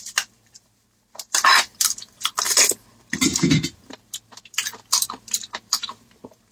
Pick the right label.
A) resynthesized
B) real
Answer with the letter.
A